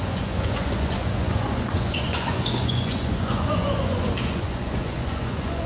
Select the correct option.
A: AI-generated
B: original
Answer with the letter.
A